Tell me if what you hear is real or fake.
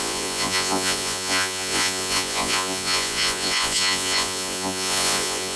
fake